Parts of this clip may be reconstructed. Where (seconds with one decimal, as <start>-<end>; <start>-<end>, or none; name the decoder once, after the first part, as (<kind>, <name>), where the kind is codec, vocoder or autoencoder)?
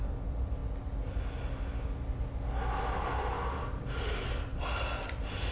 4.5-5.0 (vocoder, BigVGAN v2)